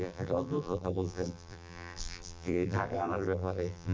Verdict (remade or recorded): remade